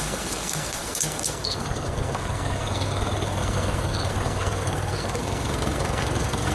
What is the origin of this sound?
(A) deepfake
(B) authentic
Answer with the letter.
A